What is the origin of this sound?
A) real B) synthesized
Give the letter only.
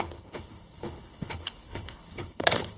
B